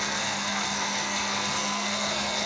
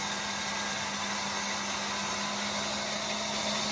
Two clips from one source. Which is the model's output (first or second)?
first